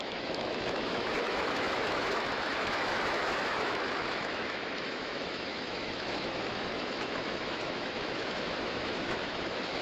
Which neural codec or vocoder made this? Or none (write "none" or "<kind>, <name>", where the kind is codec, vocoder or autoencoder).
autoencoder, DAC-VAE